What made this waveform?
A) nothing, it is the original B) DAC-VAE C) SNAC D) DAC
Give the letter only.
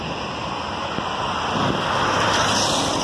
A